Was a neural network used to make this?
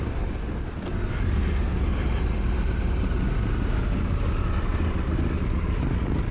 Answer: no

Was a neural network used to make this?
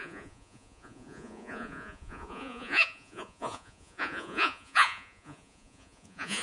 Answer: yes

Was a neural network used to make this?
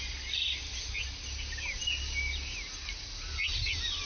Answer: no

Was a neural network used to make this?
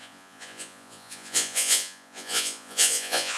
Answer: yes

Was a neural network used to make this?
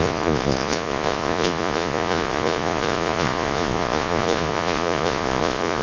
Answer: yes